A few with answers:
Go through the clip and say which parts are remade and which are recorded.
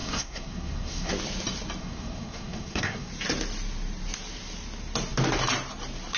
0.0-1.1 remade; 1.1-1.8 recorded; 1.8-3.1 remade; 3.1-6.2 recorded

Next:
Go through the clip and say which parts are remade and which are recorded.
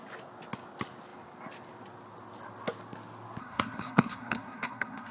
0.0-3.4 recorded; 3.4-5.1 remade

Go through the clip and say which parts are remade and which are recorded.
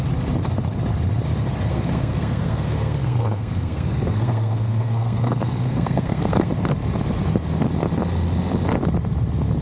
0.0-1.7 recorded; 1.7-6.5 remade; 6.5-9.6 recorded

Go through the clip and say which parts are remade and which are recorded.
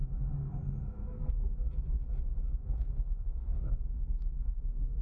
0.0-0.4 recorded; 0.4-1.4 remade; 1.4-2.5 recorded; 2.5-4.6 remade; 4.6-5.0 recorded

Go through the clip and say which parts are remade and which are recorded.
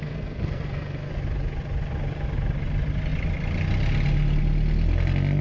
0.0-1.1 remade; 1.1-5.4 recorded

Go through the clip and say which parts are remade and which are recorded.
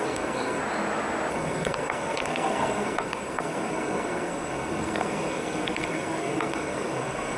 0.0-0.6 remade; 0.6-1.3 recorded; 1.3-7.4 remade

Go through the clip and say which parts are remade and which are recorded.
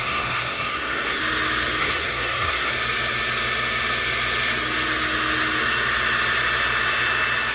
0.0-1.2 remade; 1.2-1.8 recorded; 1.8-2.7 remade; 2.7-7.5 recorded